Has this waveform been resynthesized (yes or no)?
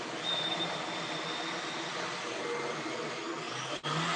no